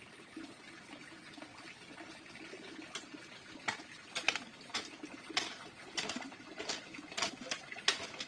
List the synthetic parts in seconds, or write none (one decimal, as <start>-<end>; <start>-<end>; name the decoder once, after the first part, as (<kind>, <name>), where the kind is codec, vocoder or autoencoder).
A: none

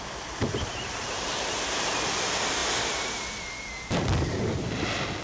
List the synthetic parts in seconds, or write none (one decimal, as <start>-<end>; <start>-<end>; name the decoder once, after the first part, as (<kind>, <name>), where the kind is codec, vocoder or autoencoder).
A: 0.0-2.6 (vocoder, BigVGAN v2); 3.2-5.2